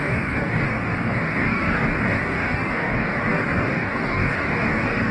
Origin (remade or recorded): remade